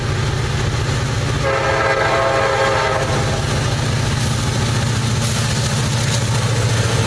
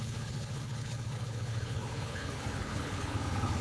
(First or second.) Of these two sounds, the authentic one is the first